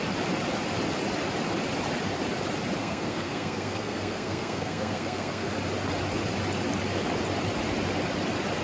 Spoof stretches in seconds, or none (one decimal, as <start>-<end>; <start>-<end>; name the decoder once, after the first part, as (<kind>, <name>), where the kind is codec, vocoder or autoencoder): 2.8-5.5 (codec, SNAC)